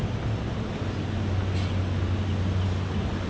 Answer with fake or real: real